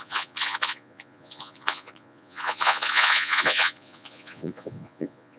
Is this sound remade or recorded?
remade